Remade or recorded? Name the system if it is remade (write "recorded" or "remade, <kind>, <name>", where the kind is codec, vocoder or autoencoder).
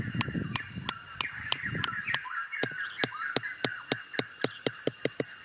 recorded